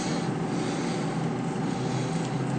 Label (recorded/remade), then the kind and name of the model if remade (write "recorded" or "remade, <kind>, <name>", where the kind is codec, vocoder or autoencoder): recorded